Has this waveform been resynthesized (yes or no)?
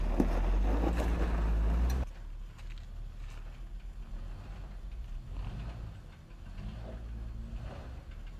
no